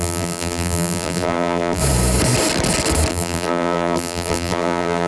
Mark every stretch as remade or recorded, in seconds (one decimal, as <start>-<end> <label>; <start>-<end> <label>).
0.0-1.8 remade; 1.8-3.1 recorded; 3.1-5.1 remade